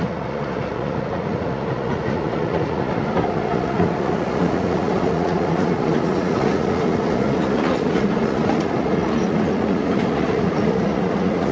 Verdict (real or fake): fake